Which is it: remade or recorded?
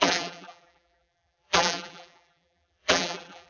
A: remade